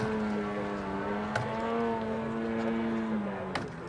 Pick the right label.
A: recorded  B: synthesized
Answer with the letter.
A